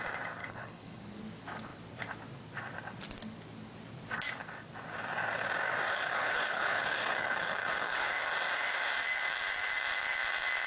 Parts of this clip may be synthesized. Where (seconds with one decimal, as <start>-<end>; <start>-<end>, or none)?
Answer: 0.4-1.0; 5.9-8.1